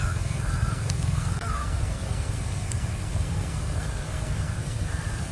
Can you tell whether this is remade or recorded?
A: remade